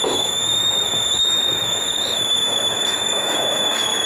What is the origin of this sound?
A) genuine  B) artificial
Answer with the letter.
B